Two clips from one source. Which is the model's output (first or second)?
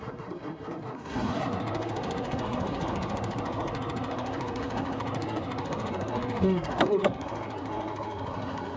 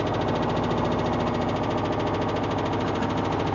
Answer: first